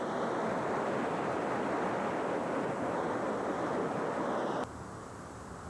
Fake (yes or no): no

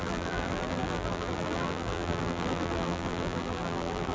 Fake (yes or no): yes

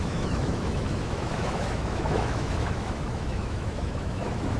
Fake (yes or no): yes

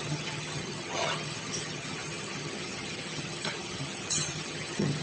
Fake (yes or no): yes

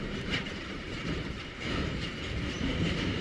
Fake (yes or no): yes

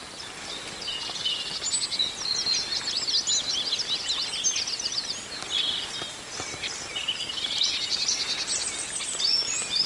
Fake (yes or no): no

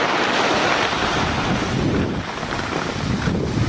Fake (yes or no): no